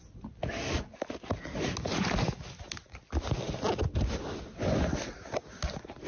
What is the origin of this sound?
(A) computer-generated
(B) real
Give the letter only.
B